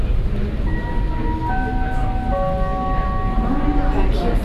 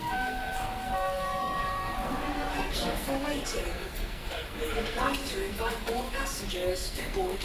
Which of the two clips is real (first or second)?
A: first